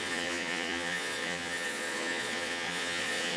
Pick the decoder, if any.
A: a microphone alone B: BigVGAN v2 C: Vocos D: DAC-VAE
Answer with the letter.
C